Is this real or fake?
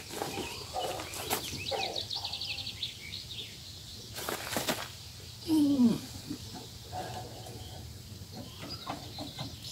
real